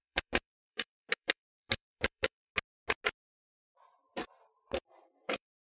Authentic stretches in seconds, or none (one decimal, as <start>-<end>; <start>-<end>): 2.5-3.3